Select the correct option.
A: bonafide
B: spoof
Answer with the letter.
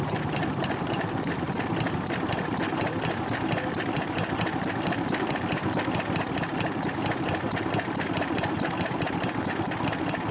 A